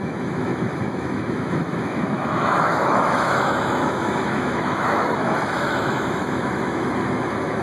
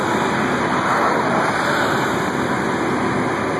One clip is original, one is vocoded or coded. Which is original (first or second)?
second